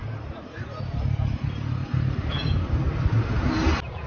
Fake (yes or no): no